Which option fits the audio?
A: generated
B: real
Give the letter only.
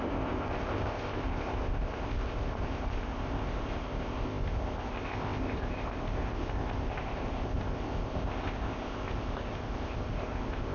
A